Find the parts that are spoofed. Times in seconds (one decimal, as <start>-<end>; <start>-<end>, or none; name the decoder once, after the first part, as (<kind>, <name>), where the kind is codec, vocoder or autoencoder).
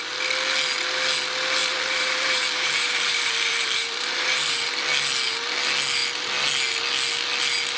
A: 1.6-4.7 (vocoder, BigVGAN v2)